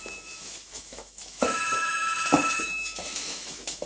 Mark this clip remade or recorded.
remade